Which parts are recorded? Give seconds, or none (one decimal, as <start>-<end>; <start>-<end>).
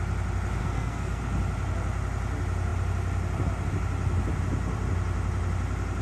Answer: 0.0-0.6; 1.2-6.0